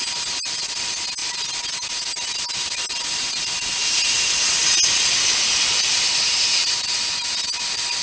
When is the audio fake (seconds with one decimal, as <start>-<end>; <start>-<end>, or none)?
none